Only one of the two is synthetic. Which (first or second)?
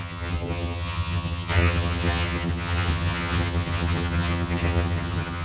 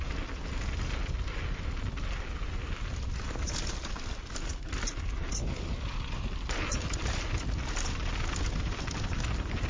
first